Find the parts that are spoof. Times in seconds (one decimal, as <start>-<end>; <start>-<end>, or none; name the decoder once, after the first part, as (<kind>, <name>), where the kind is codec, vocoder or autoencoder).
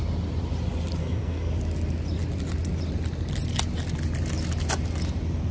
1.0-1.5 (codec, SNAC)